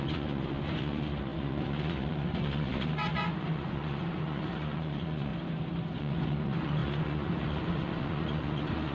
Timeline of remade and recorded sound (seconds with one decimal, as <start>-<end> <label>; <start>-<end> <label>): 0.0-5.3 remade; 5.3-6.0 recorded; 6.0-8.9 remade